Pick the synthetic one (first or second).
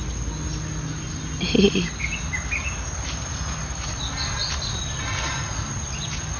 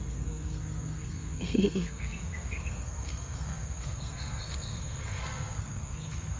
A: second